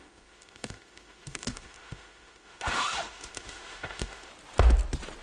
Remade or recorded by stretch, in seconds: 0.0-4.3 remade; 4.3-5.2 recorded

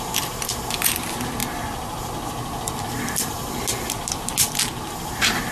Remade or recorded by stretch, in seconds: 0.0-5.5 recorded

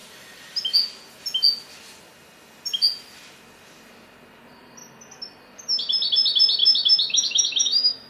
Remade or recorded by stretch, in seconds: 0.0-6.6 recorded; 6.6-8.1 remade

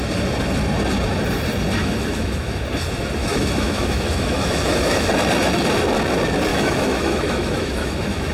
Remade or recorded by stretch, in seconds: 0.0-1.8 recorded; 1.8-2.6 remade; 2.6-3.2 recorded; 3.2-5.1 remade; 5.1-6.5 recorded; 6.5-8.3 remade